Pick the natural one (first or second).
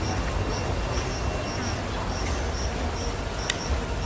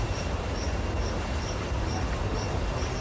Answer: first